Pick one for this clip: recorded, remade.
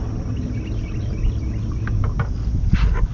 recorded